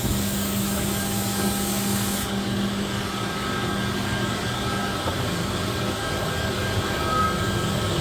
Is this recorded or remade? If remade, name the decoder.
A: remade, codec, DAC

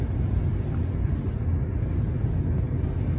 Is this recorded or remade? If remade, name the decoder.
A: recorded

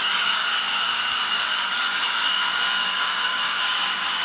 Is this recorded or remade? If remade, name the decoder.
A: remade, codec, DAC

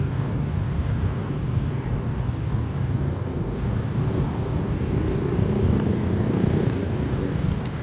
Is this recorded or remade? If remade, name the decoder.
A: remade, codec, DAC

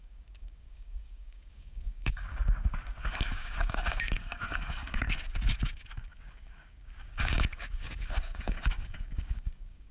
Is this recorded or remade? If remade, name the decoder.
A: remade, codec, DAC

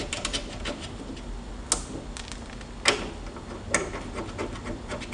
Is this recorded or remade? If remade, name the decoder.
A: recorded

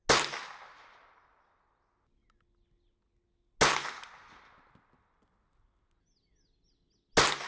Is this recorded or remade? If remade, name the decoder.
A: recorded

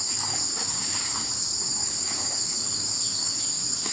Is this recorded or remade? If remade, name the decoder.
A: remade, codec, DAC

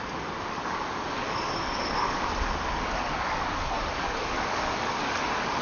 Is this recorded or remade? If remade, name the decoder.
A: remade, codec, DAC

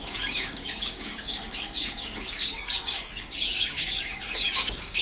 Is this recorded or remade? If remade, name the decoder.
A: remade, codec, DAC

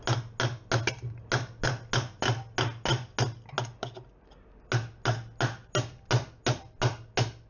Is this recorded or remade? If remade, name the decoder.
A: recorded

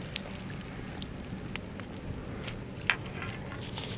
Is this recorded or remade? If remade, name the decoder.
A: recorded